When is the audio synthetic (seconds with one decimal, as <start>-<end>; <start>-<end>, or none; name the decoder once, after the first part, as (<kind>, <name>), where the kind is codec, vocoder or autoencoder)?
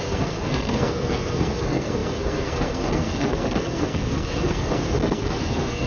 0.0-5.9 (codec, SNAC)